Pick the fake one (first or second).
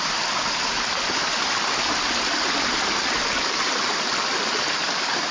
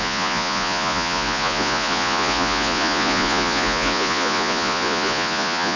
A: second